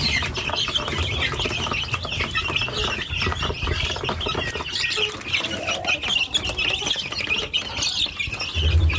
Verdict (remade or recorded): recorded